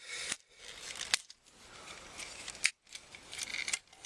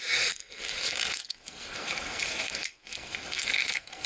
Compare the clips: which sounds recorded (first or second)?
first